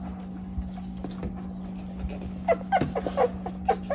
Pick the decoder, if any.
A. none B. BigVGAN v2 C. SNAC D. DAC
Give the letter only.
A